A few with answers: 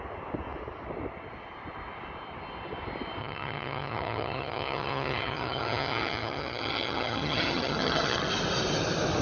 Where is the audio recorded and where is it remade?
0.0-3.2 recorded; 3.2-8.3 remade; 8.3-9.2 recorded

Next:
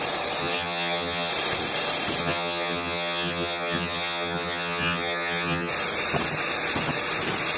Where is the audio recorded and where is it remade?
0.0-0.4 recorded; 0.4-1.3 remade; 1.3-2.2 recorded; 2.2-5.7 remade; 5.7-7.6 recorded

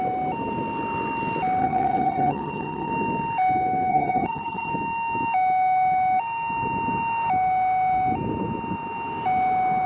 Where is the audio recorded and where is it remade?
0.0-1.6 recorded; 1.6-2.9 remade; 2.9-3.9 recorded; 3.9-4.7 remade; 4.7-9.9 recorded

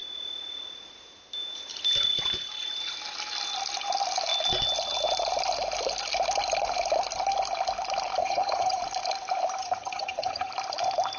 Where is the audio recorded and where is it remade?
0.0-8.2 recorded; 8.2-8.8 remade; 8.8-9.6 recorded; 9.6-10.5 remade; 10.5-11.2 recorded

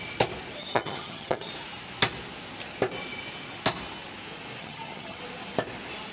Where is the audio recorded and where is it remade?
0.0-0.6 recorded; 0.6-1.5 remade; 1.5-4.6 recorded; 4.6-5.2 remade; 5.2-6.1 recorded

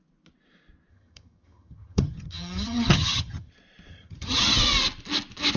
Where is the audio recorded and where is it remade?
0.0-0.9 recorded; 0.9-3.5 remade; 3.5-3.9 recorded; 3.9-4.6 remade; 4.6-5.6 recorded

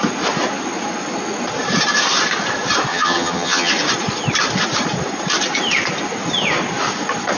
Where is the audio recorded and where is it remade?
0.0-2.9 recorded; 2.9-3.7 remade; 3.7-7.4 recorded

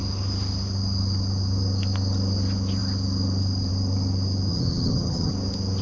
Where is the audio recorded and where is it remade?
0.0-4.5 recorded; 4.5-5.3 remade; 5.3-5.8 recorded